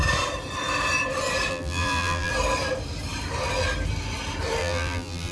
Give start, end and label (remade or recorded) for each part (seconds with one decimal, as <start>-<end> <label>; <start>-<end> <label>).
0.0-1.5 recorded; 1.5-2.3 remade; 2.3-4.6 recorded; 4.6-5.3 remade